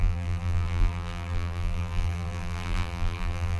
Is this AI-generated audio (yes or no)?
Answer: yes